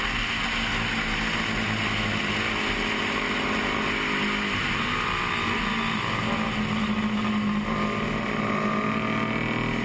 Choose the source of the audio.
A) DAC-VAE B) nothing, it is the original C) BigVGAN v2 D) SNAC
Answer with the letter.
B